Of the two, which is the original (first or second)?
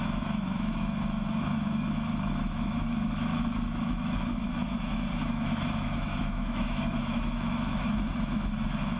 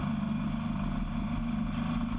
second